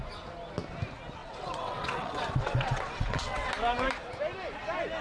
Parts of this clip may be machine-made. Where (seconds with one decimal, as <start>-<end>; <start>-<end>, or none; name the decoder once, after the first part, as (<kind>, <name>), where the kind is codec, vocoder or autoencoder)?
1.2-3.5 (vocoder, WaveNeXt)